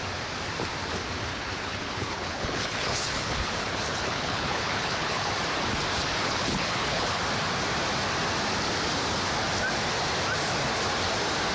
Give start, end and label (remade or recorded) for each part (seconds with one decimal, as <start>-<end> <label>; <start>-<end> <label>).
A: 0.0-1.3 recorded; 1.3-5.3 remade; 5.3-6.2 recorded; 6.2-7.2 remade; 7.2-11.5 recorded